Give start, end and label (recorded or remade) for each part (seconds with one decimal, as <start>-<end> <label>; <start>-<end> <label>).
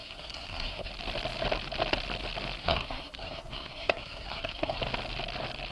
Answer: 0.0-0.9 remade; 0.9-2.6 recorded; 2.6-4.8 remade; 4.8-5.7 recorded